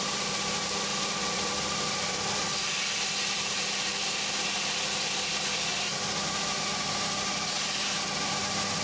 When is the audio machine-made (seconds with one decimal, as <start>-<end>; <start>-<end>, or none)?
0.9-3.2; 3.9-4.5